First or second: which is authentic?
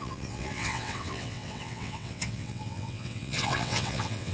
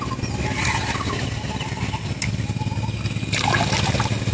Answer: second